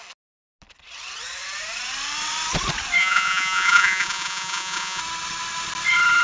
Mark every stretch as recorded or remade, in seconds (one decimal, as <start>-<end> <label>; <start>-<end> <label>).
0.0-3.0 recorded; 3.0-5.0 remade; 5.0-6.2 recorded